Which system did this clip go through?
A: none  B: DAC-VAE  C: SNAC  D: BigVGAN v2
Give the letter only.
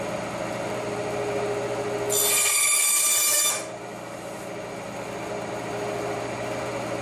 A